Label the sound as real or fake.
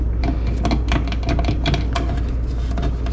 real